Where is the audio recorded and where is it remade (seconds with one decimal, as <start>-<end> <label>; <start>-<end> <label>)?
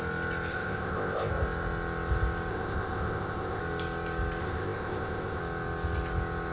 0.0-0.5 recorded; 0.5-1.3 remade; 1.3-2.5 recorded; 2.5-3.6 remade; 3.6-4.4 recorded; 4.4-5.4 remade; 5.4-6.5 recorded